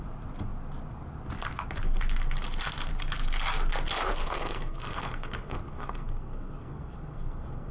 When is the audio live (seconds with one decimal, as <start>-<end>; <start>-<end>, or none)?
0.0-4.1